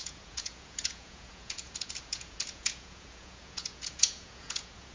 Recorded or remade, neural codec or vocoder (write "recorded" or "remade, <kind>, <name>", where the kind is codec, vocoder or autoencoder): remade, vocoder, Vocos